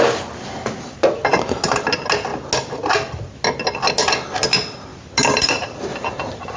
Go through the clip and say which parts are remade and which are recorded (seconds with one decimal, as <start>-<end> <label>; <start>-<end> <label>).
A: 0.0-4.9 recorded; 4.9-6.6 remade